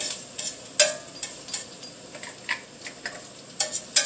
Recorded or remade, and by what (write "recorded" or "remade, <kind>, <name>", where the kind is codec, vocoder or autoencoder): recorded